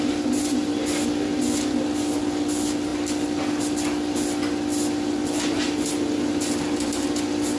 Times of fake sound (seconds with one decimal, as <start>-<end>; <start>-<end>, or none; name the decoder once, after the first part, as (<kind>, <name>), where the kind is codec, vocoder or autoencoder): none